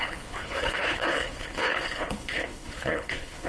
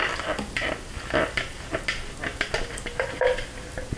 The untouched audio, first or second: second